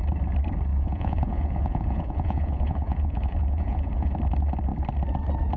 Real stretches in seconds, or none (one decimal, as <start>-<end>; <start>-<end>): 0.0-0.7; 4.1-5.6